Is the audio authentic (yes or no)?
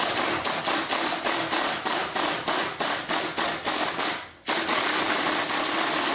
yes